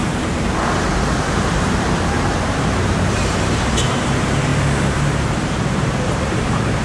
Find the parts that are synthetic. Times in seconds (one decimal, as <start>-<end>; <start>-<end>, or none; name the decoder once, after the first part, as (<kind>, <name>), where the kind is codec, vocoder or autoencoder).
0.0-4.5 (vocoder, BigVGAN v2); 5.7-6.8